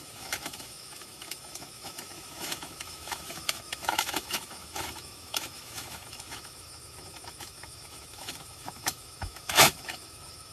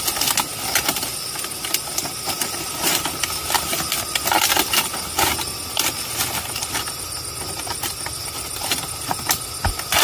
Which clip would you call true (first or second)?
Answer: second